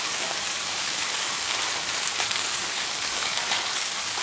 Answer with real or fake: fake